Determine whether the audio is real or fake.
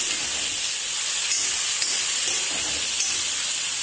real